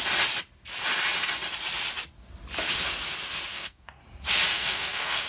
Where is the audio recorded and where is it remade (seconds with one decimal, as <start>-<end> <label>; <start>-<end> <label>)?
0.0-3.5 recorded; 3.5-4.0 remade; 4.0-4.5 recorded; 4.5-5.3 remade

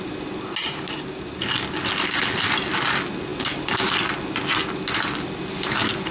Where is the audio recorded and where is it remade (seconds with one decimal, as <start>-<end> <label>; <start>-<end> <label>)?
0.0-0.6 recorded; 0.6-1.4 remade; 1.4-6.1 recorded

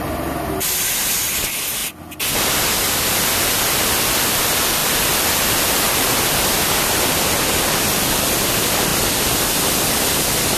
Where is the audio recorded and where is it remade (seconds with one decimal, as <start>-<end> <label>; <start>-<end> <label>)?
0.0-10.6 recorded